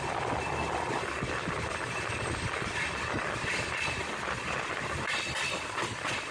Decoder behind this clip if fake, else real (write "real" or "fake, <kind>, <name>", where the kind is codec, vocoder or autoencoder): real